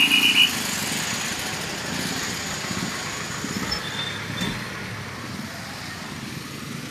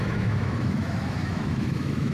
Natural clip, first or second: first